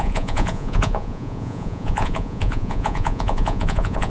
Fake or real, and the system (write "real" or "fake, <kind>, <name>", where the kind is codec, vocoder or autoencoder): fake, vocoder, Vocos